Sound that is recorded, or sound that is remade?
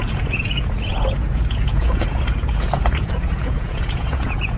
remade